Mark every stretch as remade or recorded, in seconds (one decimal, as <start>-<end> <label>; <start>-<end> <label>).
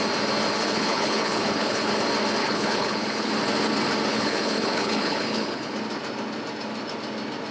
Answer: 0.0-0.6 recorded; 0.6-1.9 remade; 1.9-2.4 recorded; 2.4-3.3 remade; 3.3-4.1 recorded; 4.1-5.7 remade; 5.7-7.5 recorded